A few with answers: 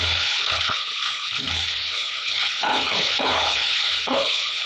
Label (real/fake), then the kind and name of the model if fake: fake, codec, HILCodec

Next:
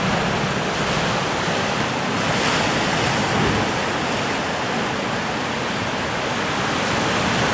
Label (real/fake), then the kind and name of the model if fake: real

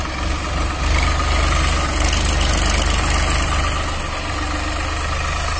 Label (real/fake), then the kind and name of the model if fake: real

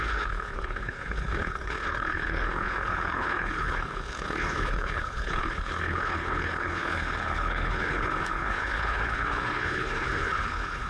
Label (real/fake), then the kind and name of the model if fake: fake, codec, HILCodec